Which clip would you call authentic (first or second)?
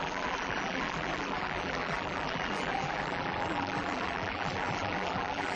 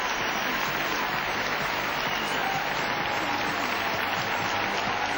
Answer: second